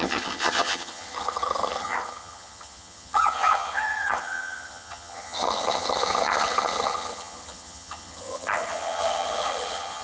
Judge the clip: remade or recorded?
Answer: remade